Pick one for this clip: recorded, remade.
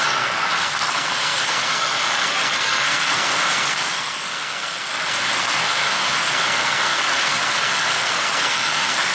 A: remade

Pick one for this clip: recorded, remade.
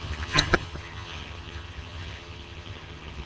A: remade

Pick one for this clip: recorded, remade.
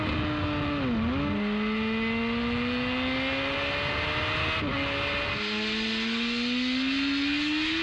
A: recorded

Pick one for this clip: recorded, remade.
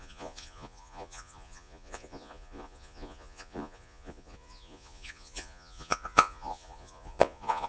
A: remade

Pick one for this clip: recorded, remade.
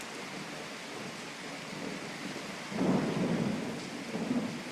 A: recorded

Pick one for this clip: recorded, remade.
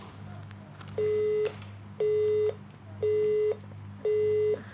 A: recorded